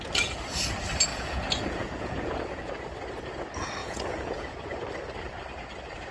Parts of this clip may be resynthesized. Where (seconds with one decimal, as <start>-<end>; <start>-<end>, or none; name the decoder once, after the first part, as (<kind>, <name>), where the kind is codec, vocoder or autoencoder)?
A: 1.1-2.7 (vocoder, Vocos); 3.8-4.9

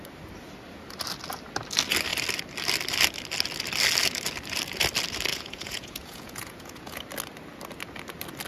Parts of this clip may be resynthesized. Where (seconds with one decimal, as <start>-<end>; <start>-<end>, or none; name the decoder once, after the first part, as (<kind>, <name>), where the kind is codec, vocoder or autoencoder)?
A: 5.3-7.0 (vocoder, Vocos)

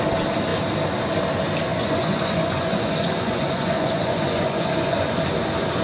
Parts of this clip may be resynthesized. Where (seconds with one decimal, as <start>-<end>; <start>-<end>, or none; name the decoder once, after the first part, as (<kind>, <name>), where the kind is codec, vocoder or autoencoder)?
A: 1.7-5.2 (vocoder, Vocos)